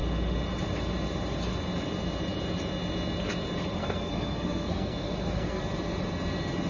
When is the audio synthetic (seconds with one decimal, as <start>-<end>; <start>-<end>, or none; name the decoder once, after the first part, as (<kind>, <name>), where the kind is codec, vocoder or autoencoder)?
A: 3.8-5.6 (codec, SNAC)

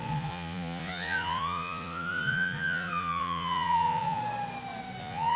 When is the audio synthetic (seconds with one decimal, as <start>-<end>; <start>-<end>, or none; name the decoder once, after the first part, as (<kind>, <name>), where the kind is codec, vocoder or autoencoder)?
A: 0.0-4.2 (vocoder, Vocos); 5.0-5.4

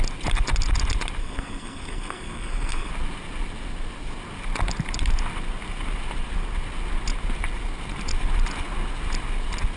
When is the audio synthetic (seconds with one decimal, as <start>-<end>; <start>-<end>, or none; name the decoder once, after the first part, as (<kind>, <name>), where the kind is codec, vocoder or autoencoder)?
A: 1.2-2.9 (codec, SNAC)

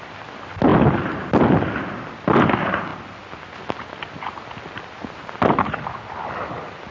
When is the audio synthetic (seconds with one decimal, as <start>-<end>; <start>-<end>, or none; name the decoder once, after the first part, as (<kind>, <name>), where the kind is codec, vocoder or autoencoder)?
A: none

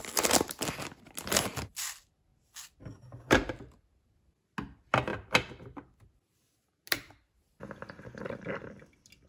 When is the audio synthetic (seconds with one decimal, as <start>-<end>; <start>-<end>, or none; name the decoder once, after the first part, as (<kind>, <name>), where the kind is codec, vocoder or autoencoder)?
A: none

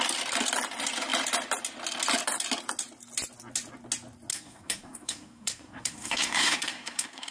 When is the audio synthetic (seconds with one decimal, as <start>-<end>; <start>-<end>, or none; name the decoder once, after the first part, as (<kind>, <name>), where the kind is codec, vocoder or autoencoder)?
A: 4.3-7.3 (codec, SNAC)